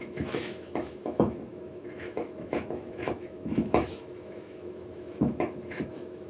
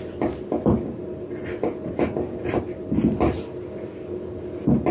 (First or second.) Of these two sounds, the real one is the second